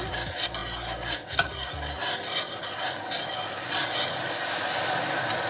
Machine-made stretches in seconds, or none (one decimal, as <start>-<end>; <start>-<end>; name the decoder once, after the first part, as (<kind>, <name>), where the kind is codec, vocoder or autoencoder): none

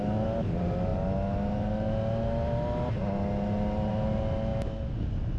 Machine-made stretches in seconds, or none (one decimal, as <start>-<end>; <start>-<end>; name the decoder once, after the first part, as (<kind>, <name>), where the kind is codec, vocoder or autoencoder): none

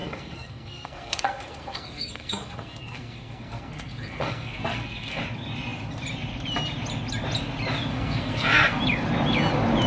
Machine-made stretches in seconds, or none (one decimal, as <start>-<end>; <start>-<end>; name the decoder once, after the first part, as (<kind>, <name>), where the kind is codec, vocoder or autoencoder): 0.0-5.2 (codec, SNAC); 7.9-8.8

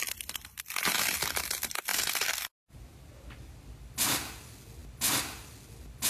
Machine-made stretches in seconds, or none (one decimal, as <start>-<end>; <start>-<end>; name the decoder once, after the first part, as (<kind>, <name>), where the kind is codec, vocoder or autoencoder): none